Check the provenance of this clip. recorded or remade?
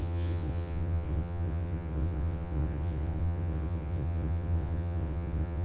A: remade